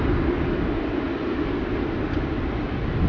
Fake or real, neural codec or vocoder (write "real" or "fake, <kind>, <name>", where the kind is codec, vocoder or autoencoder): real